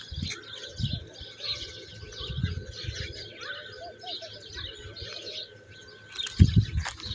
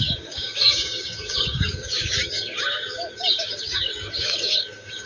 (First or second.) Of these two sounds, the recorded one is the first